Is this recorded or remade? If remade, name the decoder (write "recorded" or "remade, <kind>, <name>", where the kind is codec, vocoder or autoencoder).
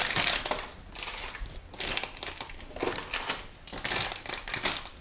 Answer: recorded